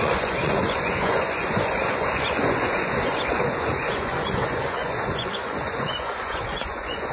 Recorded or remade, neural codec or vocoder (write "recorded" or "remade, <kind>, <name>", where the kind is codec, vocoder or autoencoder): remade, vocoder, Vocos